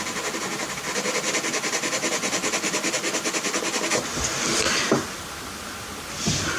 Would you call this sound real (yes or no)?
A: yes